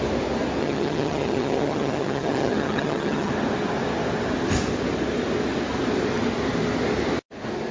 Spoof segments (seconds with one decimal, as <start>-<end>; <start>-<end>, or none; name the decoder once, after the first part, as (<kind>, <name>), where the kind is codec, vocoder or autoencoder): 0.6-3.3 (vocoder, HiFi-GAN)